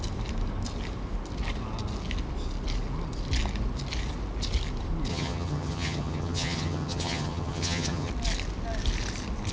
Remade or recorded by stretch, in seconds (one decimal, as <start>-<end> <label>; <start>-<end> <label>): 0.0-5.1 recorded; 5.1-8.1 remade; 8.1-9.5 recorded